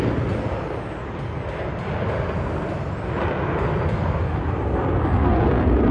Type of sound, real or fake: real